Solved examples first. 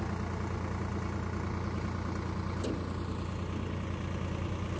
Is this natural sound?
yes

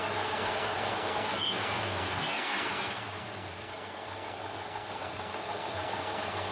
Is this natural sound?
no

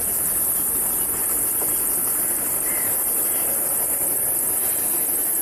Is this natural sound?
yes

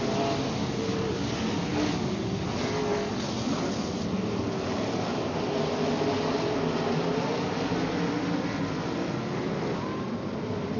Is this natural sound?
yes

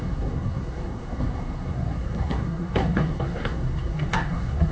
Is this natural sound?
no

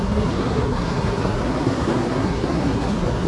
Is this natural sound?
no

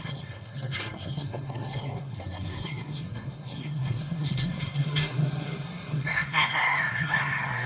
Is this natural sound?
no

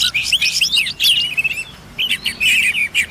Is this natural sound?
yes